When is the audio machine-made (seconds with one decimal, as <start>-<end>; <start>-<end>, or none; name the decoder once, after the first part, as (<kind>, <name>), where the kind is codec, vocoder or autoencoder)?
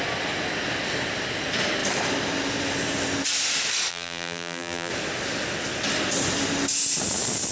3.9-4.9 (vocoder, BigVGAN v2)